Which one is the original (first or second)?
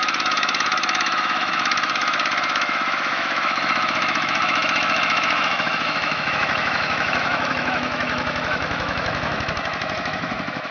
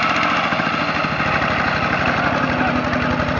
second